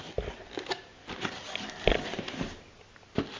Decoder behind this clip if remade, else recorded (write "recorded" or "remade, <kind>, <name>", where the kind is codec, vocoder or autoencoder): recorded